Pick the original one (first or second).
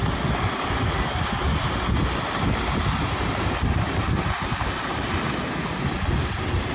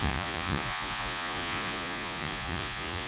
first